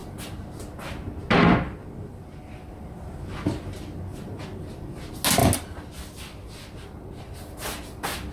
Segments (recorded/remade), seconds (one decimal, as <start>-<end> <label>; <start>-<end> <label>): 0.0-8.3 recorded

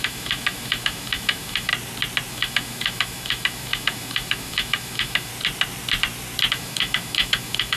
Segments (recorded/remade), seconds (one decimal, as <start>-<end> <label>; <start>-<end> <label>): 0.0-1.7 remade; 1.7-2.3 recorded; 2.3-5.3 remade; 5.3-6.5 recorded; 6.5-7.8 remade

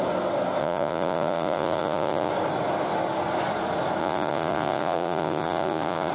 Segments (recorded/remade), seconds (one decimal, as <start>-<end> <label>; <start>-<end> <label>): 0.0-0.6 recorded; 0.6-2.3 remade; 2.3-4.0 recorded; 4.0-6.1 remade

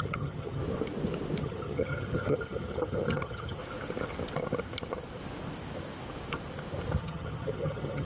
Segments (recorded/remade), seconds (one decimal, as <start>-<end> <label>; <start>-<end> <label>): 0.0-0.6 remade; 0.6-1.4 recorded; 1.4-3.6 remade; 3.6-7.0 recorded; 7.0-8.1 remade

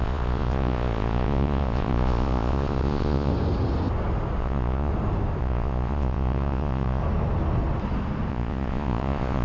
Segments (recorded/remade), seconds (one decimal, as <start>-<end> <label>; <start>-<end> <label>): 0.0-3.3 remade; 3.3-4.4 recorded; 4.4-4.9 remade; 4.9-5.4 recorded; 5.4-7.0 remade; 7.0-8.3 recorded; 8.3-9.4 remade

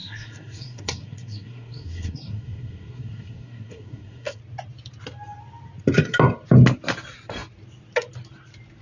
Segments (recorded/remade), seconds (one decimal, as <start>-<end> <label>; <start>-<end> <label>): 0.0-4.4 remade; 4.4-8.8 recorded